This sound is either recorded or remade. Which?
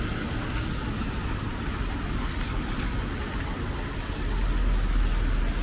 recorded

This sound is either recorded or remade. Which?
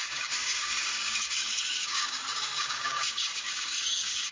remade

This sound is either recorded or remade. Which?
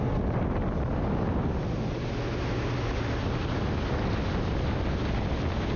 recorded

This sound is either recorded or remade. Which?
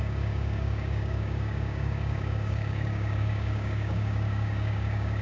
remade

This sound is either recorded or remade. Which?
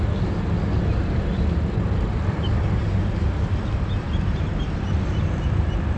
recorded